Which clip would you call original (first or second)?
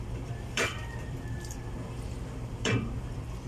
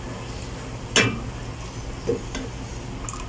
second